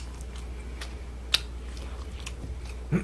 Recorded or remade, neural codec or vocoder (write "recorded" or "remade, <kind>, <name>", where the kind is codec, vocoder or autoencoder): recorded